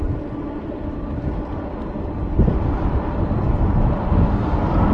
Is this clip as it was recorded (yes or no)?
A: yes